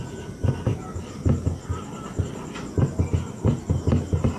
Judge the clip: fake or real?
real